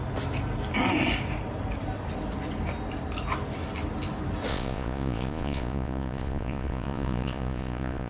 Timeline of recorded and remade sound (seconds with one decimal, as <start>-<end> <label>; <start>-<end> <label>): 0.0-4.5 recorded; 4.5-8.1 remade